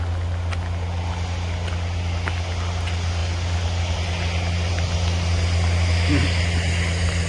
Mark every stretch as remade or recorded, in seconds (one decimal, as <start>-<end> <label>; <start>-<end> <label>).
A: 0.0-7.3 recorded